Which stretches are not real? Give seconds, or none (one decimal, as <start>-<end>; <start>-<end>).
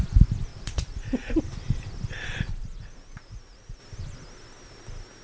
0.5-1.4; 2.5-3.8